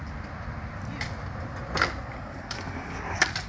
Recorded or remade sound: recorded